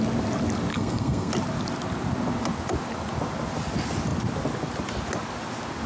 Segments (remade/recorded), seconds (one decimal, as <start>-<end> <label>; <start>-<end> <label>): 0.0-0.7 recorded; 0.7-1.3 remade; 1.3-5.9 recorded